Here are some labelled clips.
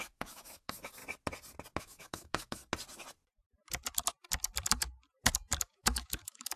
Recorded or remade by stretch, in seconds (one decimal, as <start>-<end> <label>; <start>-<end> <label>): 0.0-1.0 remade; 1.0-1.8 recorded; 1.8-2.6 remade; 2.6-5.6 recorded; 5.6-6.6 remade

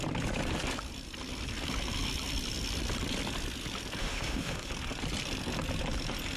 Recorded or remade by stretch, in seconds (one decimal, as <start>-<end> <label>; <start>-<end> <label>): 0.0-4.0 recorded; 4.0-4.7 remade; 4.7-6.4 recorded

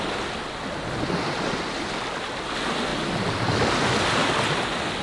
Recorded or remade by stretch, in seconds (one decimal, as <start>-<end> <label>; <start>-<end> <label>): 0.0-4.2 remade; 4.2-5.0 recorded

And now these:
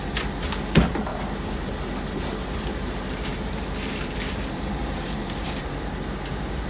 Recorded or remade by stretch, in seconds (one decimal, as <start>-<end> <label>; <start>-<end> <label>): 0.0-1.1 recorded; 1.1-1.7 remade; 1.7-3.3 recorded; 3.3-5.7 remade; 5.7-6.7 recorded

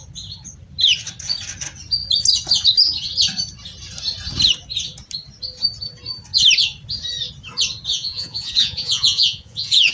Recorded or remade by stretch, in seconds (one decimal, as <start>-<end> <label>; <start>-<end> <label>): 0.0-7.9 recorded; 7.9-9.9 remade

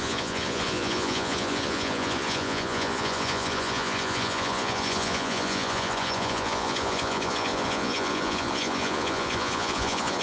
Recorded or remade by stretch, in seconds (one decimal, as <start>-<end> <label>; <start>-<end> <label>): 0.0-10.2 remade

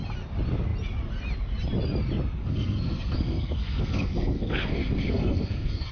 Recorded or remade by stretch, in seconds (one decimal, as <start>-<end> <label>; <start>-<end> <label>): 0.0-2.4 recorded; 2.4-5.9 remade

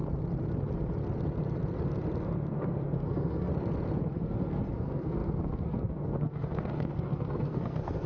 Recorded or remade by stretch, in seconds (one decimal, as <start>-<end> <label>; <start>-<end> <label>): 0.0-2.5 recorded; 2.5-3.5 remade; 3.5-4.0 recorded; 4.0-8.1 remade